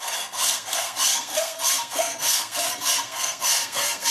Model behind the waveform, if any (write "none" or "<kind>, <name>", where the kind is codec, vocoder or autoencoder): codec, SNAC